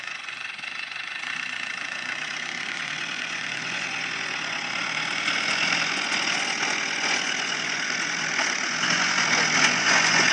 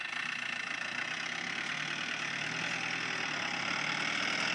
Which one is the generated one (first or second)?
first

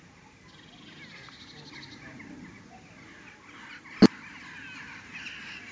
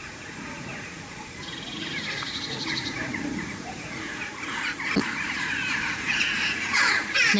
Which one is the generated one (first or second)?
second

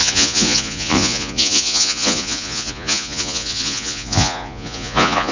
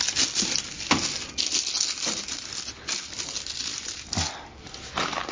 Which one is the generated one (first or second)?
first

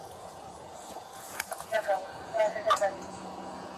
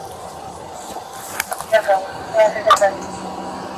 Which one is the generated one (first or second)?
first